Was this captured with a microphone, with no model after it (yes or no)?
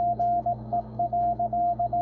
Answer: no